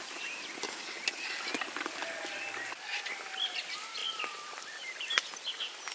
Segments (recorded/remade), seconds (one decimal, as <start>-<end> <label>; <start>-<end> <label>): 0.0-4.0 recorded; 4.0-5.3 remade; 5.3-5.9 recorded